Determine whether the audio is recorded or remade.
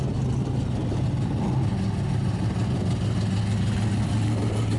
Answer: recorded